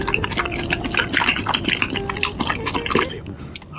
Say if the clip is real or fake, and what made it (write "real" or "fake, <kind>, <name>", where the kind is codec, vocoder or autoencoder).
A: real